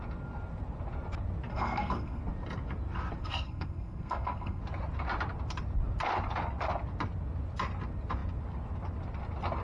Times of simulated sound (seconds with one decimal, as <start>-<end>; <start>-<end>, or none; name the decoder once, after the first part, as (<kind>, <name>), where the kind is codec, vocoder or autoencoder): 1.5-2.2 (codec, SNAC); 3.2-4.6